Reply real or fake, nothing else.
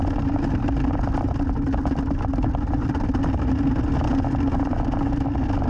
real